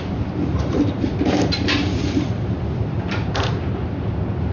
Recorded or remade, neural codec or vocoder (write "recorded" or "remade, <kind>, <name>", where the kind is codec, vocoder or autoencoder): remade, vocoder, BigVGAN v2